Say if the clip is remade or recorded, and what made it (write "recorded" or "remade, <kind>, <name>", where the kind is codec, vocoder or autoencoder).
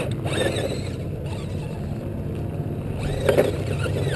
recorded